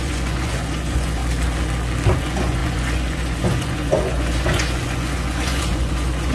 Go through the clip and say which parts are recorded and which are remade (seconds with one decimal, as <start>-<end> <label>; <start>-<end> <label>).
0.0-1.2 remade; 1.2-2.2 recorded; 2.2-6.3 remade